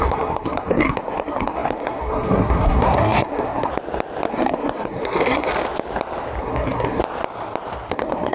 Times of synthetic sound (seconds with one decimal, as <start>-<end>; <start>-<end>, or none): 0.0-3.7; 4.3-5.5; 6.4-7.0; 7.9-8.3